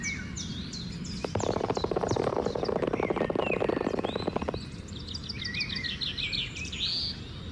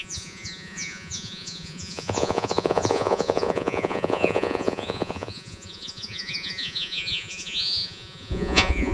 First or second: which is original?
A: first